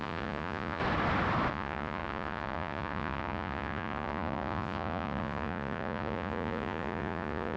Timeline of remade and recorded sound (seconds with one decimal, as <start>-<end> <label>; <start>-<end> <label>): 0.0-0.8 remade; 0.8-1.5 recorded; 1.5-7.6 remade